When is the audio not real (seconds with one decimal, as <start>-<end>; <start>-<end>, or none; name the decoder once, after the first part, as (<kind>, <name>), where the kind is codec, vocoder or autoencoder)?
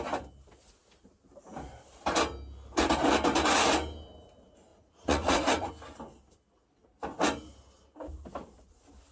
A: 4.7-5.7 (vocoder, Vocos)